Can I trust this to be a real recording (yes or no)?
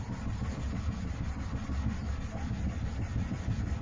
yes